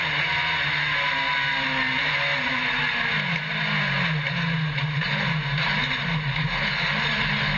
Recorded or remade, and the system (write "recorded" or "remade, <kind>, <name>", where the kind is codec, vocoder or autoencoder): recorded